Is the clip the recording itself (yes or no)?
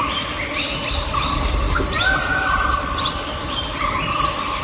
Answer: yes